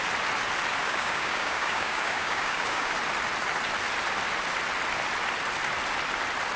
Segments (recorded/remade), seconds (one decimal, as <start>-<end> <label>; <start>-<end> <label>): 0.0-0.8 recorded; 0.8-2.9 remade; 2.9-6.6 recorded